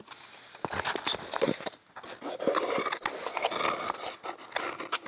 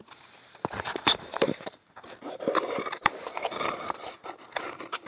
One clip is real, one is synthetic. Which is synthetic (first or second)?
second